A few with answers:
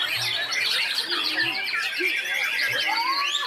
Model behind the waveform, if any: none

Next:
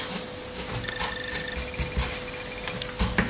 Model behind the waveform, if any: none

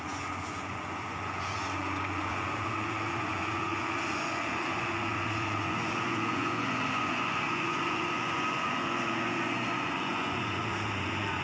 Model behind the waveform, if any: vocoder, Vocos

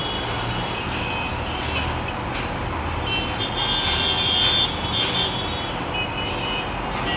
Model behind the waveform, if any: none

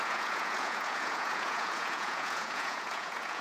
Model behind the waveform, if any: vocoder, Vocos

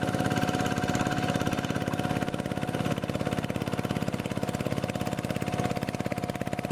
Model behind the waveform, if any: none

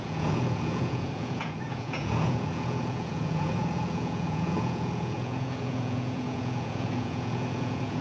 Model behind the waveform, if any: vocoder, Vocos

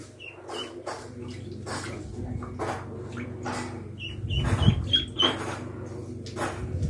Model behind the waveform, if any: none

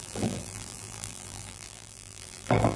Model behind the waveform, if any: vocoder, BigVGAN v2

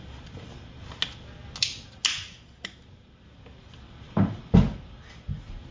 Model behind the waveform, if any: none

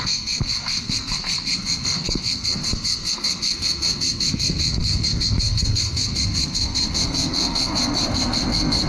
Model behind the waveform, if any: codec, SNAC